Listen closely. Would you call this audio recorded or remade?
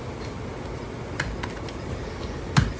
recorded